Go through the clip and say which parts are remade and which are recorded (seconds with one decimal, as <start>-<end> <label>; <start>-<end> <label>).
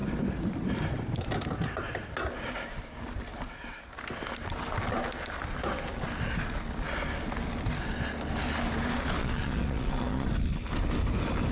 0.0-9.2 recorded; 9.2-10.3 remade; 10.3-11.5 recorded